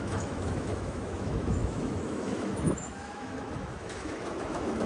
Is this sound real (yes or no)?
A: no